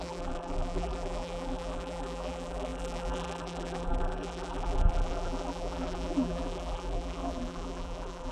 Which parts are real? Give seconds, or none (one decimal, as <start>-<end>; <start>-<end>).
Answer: none